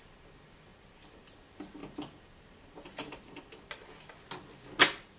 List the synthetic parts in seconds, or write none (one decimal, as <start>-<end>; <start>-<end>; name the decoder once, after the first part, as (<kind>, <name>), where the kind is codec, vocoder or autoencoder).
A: 0.7-1.3 (vocoder, BigVGAN v2); 1.8-3.5